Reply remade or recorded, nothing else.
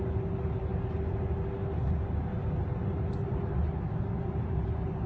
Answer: recorded